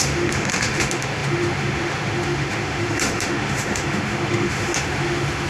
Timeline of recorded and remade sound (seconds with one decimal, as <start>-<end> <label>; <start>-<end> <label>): 0.0-5.5 remade